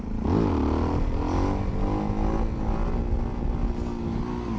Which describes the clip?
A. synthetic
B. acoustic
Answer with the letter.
B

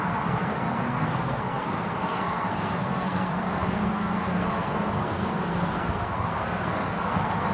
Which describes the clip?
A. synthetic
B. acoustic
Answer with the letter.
A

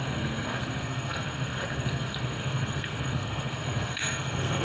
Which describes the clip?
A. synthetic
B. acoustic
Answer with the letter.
A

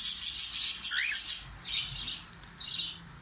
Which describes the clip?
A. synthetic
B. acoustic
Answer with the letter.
B